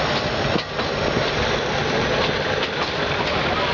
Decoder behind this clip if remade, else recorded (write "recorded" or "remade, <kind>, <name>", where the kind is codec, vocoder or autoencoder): recorded